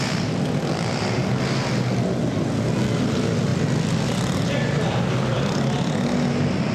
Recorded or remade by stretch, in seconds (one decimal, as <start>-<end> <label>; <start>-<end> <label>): 0.0-6.7 recorded